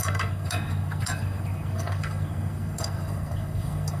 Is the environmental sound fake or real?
fake